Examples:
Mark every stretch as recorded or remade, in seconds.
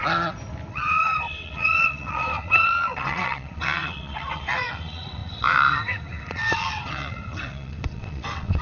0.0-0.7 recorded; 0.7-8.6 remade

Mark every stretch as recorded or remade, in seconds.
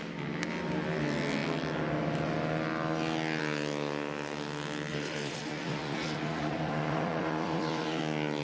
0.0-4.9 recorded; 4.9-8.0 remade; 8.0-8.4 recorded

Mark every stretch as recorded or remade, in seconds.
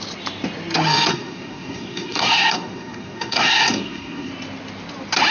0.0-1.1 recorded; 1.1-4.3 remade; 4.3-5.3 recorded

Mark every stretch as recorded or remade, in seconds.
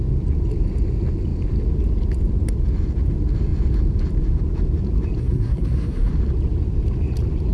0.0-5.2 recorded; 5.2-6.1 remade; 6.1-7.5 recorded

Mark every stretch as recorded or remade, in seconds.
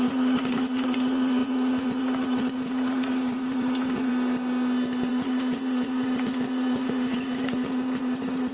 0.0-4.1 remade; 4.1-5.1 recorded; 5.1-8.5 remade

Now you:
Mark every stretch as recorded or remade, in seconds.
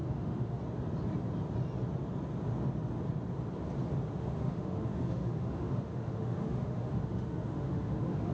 0.0-0.6 remade; 0.6-4.2 recorded; 4.2-8.3 remade